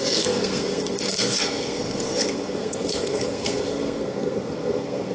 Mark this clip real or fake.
fake